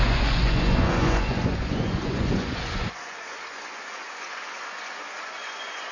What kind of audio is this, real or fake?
fake